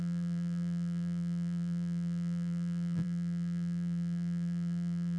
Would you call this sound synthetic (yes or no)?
yes